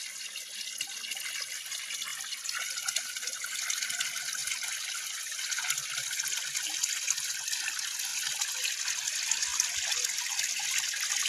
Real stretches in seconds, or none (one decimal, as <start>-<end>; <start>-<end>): 0.0-2.1; 2.8-11.3

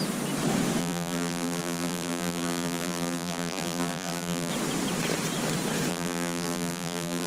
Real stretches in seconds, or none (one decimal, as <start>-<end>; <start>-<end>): 0.0-0.8; 4.5-5.9

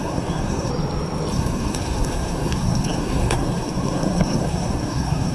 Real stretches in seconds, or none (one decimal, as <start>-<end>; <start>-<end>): 0.7-1.3

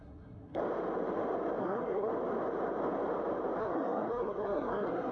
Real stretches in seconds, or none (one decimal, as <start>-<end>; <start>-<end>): 0.6-1.6; 2.1-3.6

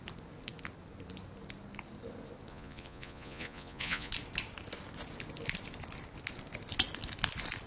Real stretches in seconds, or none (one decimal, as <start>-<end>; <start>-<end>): 0.0-2.5; 4.1-7.7

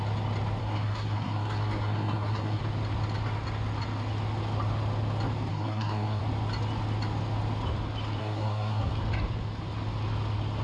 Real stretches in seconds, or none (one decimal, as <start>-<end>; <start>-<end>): 0.0-0.6; 2.6-5.5; 6.2-8.2; 8.9-10.6

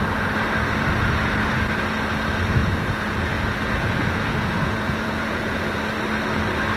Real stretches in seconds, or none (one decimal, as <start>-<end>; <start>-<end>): 0.0-2.6; 5.6-6.8

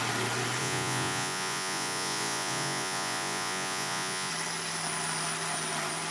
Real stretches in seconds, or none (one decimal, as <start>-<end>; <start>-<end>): 0.0-0.6; 4.3-6.1